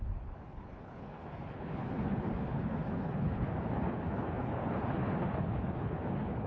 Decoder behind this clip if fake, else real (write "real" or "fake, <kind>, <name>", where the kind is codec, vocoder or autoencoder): fake, codec, HILCodec